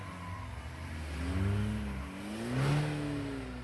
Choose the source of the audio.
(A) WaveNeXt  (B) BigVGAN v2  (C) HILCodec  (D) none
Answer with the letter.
D